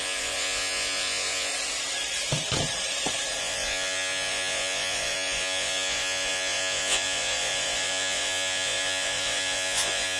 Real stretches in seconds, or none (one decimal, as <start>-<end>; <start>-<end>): 1.5-3.4